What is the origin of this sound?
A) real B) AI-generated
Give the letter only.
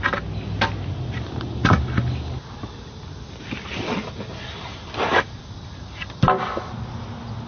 A